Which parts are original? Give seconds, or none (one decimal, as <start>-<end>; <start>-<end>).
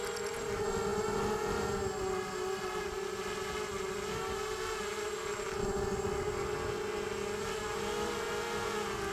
0.0-9.1